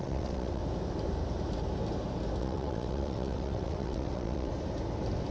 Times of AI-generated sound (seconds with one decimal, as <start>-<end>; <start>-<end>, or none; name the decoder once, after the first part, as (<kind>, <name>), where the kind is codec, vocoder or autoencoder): 0.0-0.6 (vocoder, WaveNeXt); 2.4-4.5